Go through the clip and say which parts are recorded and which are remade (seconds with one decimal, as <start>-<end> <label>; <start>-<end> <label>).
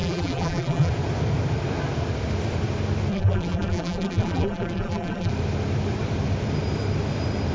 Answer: 0.0-0.9 remade; 0.9-3.1 recorded; 3.1-5.3 remade; 5.3-7.5 recorded